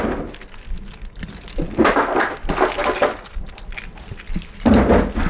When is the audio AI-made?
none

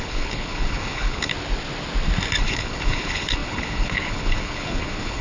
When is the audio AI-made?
0.0-1.3 (codec, HILCodec); 2.4-5.2

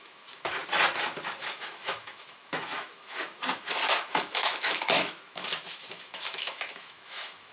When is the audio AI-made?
0.0-0.6 (autoencoder, DAC-VAE); 1.4-7.5